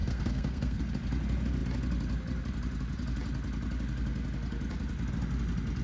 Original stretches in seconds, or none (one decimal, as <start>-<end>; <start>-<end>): 0.8-5.8